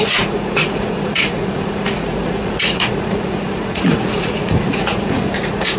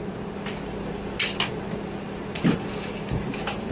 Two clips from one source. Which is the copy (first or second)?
first